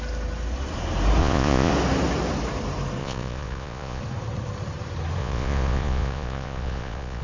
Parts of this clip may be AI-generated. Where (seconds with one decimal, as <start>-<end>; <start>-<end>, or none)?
1.2-1.7; 3.0-4.0; 5.2-7.2